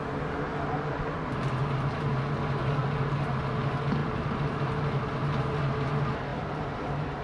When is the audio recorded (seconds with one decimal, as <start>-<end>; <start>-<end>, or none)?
0.0-0.5; 1.6-4.0; 4.6-6.3